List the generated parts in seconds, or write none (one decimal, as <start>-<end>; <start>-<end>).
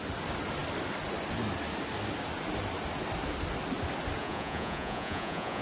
4.2-5.6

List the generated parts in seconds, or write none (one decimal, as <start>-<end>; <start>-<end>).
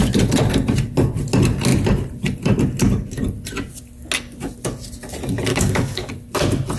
5.5-6.1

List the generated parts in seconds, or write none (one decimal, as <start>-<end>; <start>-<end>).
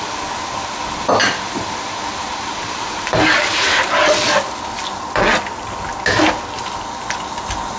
1.2-3.7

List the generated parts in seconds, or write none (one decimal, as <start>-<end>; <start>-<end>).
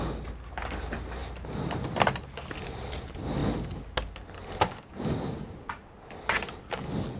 none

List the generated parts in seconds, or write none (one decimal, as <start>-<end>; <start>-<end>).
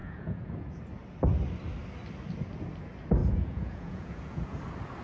0.0-0.8; 3.2-4.6